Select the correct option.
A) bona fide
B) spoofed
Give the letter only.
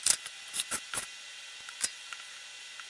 A